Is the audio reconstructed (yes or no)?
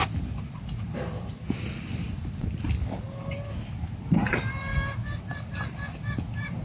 no